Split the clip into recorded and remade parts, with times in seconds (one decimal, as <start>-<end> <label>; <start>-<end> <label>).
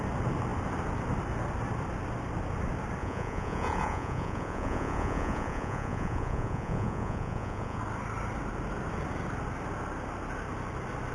0.0-3.0 recorded; 3.0-7.8 remade; 7.8-11.1 recorded